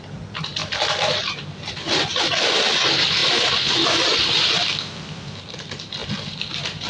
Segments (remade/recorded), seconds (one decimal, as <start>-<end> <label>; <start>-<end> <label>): 0.0-6.9 recorded